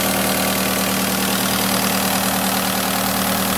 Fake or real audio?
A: real